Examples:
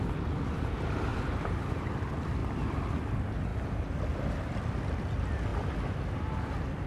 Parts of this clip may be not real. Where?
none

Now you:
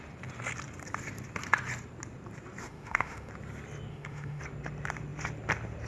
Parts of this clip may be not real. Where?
2.6-3.3 (autoencoder, DAC-VAE); 3.9-4.4

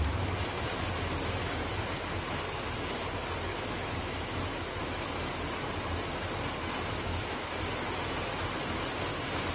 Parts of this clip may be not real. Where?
3.5-5.3 (autoencoder, DAC-VAE); 7.1-7.6

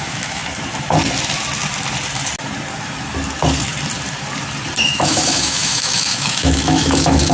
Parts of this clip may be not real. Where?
0.0-0.4 (autoencoder, DAC-VAE); 4.8-7.3

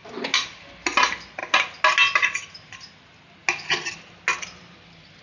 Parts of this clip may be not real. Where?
none

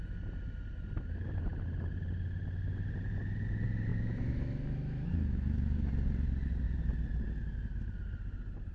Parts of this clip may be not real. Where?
3.9-5.9 (autoencoder, DAC-VAE)